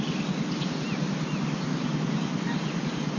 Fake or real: real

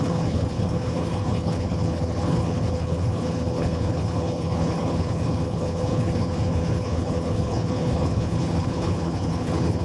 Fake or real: fake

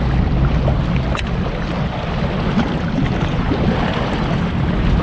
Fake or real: real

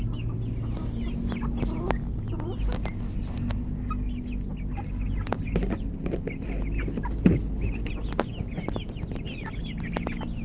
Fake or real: real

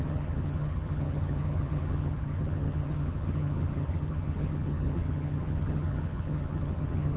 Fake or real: fake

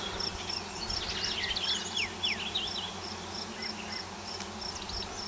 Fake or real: real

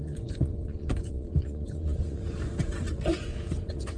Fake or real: fake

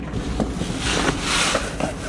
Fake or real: real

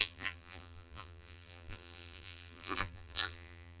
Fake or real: fake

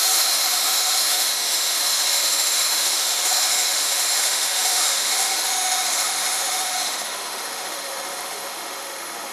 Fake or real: fake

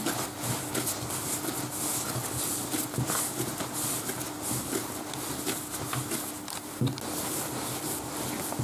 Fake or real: real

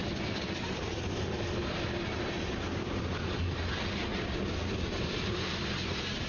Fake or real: real